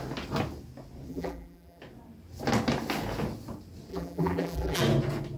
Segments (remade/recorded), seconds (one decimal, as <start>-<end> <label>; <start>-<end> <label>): 0.0-1.1 recorded; 1.1-1.8 remade; 1.8-3.9 recorded; 3.9-4.8 remade; 4.8-5.4 recorded